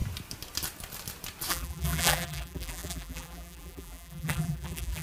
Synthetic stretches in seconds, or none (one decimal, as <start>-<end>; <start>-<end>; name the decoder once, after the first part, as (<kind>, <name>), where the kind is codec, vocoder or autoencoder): 1.5-5.0 (vocoder, BigVGAN v2)

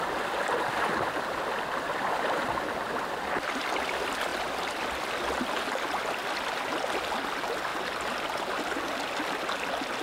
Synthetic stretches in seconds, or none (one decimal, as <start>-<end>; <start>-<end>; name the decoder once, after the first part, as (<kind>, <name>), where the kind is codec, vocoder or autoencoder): none

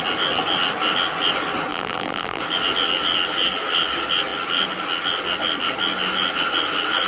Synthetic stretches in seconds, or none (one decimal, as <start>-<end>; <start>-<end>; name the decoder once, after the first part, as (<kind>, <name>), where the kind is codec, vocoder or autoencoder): 1.7-2.4 (vocoder, BigVGAN v2)